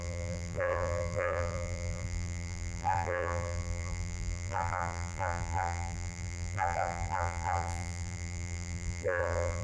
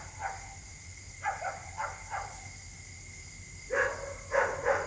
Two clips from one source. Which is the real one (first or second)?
second